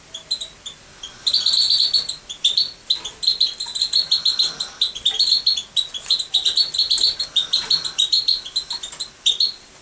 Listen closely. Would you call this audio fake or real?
real